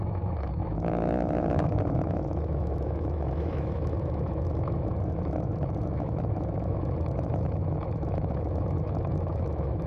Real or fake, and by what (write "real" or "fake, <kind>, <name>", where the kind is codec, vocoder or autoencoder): fake, autoencoder, DAC-VAE